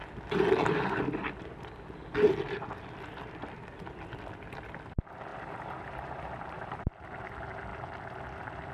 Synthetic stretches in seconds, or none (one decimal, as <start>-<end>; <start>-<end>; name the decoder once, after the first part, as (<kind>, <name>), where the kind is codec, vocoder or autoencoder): 5.3-6.8 (vocoder, BigVGAN v2)